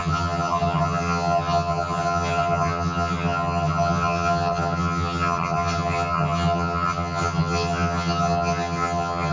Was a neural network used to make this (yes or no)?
yes